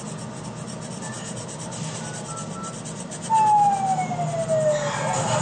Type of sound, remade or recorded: recorded